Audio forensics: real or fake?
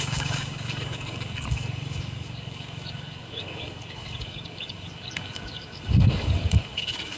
fake